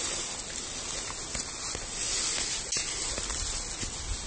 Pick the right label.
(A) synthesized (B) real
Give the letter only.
B